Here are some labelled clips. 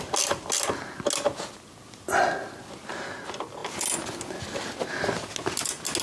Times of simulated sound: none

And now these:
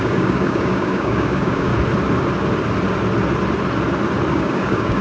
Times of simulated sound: 0.0-1.7; 4.3-5.0